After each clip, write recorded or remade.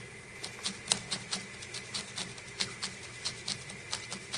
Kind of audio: recorded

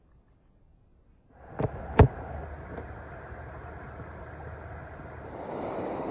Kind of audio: recorded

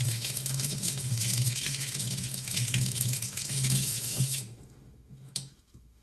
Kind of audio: remade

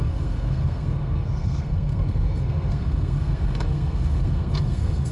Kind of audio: remade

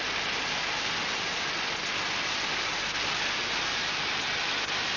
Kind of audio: recorded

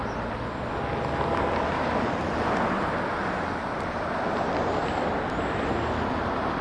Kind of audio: remade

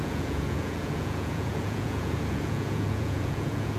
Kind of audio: remade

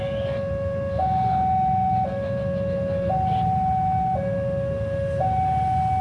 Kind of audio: recorded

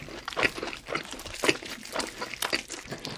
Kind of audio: recorded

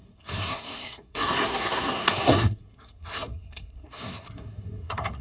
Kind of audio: remade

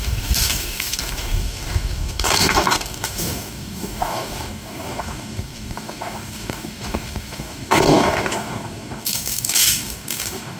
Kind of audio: remade